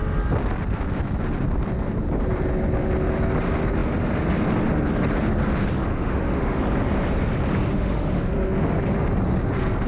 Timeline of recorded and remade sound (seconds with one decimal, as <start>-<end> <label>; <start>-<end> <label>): 0.0-5.9 recorded; 5.9-6.6 remade; 6.6-7.7 recorded; 7.7-8.3 remade; 8.3-9.9 recorded